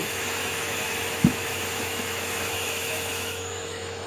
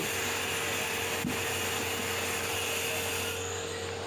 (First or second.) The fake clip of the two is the first